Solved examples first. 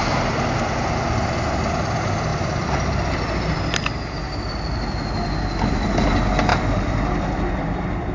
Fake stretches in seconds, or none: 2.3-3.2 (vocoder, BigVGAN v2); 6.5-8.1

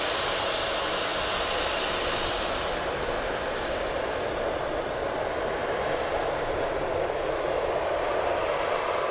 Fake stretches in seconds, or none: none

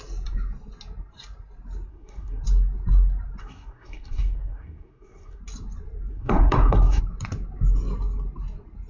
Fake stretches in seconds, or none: 1.9-2.4 (codec, SNAC); 3.4-5.4; 6.1-7.0

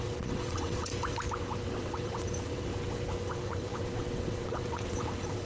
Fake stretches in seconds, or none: 0.0-0.9 (vocoder, WaveNeXt); 1.7-2.7; 3.3-5.5